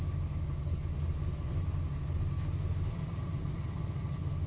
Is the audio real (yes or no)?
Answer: yes